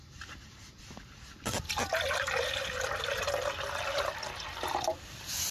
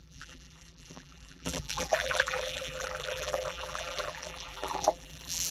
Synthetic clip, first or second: second